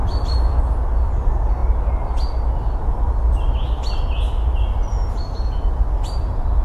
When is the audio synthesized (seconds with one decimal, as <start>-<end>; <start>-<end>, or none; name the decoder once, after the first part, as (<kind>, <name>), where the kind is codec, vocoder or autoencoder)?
0.0-0.6 (vocoder, BigVGAN v2)